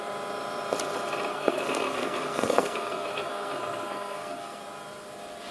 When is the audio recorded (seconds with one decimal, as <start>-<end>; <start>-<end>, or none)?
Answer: 0.0-1.3; 4.6-5.5